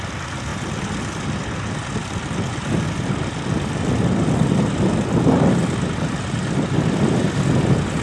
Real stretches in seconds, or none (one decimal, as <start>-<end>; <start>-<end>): 0.0-8.0